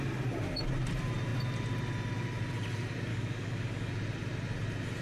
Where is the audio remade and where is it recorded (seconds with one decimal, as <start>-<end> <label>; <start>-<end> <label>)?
0.0-3.1 recorded; 3.1-3.9 remade; 3.9-5.0 recorded